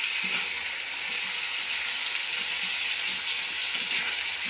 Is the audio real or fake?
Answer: real